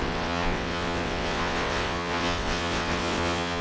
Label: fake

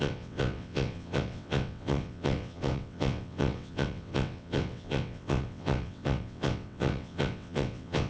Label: fake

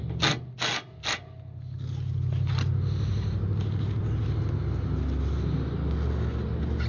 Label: real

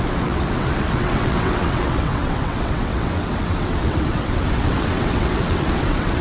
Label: fake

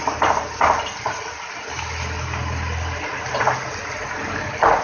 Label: real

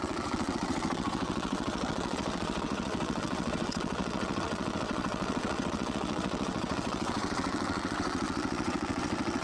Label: fake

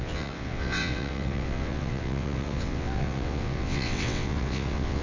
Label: fake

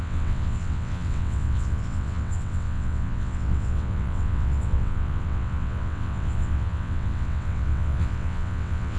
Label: fake